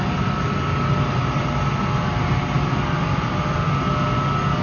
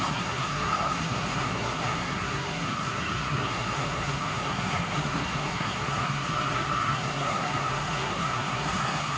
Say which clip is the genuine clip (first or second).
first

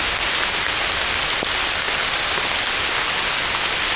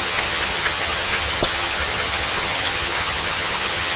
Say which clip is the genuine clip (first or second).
first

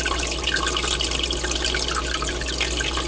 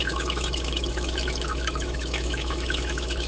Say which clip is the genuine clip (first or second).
first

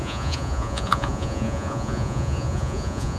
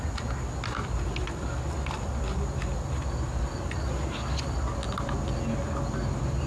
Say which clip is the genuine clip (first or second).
second